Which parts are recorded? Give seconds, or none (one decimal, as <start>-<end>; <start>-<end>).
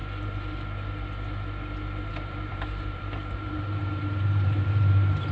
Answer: 0.0-2.1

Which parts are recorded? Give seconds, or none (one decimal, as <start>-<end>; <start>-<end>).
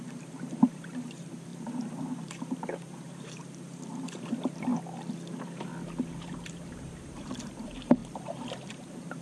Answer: 4.7-5.3; 5.7-6.2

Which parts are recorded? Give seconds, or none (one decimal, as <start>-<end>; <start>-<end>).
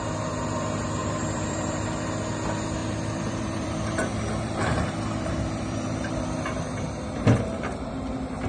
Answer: 0.0-1.0; 2.3-2.8; 7.9-8.5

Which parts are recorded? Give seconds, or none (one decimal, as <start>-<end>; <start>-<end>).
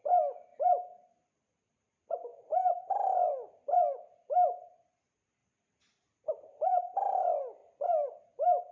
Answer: 0.0-0.5; 1.6-2.3; 4.7-5.4; 6.7-7.6; 8.2-8.7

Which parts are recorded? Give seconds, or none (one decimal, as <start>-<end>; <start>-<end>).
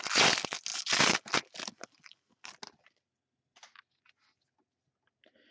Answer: 0.0-5.5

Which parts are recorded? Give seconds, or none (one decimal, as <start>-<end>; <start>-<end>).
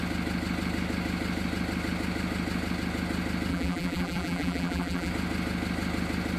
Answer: 0.0-3.5; 5.1-6.4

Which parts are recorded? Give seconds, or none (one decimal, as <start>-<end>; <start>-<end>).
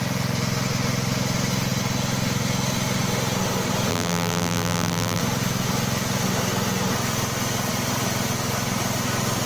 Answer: 0.0-3.9; 5.2-9.5